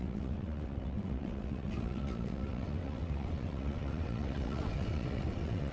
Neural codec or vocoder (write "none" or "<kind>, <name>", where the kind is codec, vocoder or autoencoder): vocoder, WaveNeXt